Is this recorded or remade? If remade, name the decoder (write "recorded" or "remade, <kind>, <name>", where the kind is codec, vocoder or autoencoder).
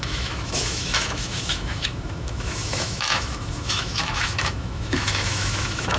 remade, autoencoder, DAC-VAE